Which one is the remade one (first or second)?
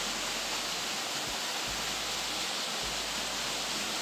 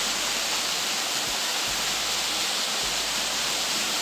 second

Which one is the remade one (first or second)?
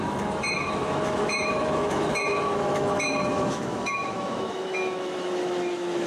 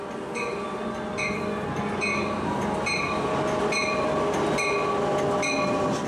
first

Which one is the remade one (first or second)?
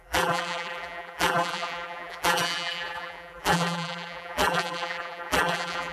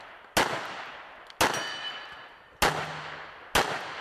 first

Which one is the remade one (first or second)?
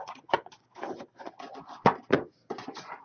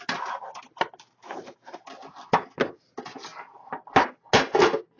first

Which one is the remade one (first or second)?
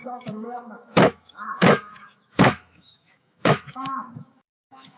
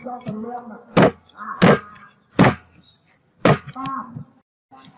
first